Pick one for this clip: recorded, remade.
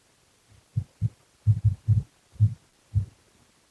recorded